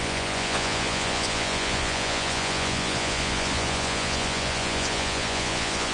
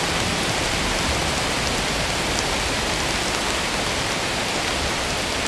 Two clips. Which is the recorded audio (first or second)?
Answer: second